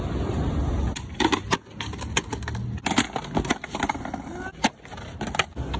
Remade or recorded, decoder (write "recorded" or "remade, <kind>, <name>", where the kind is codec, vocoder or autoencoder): recorded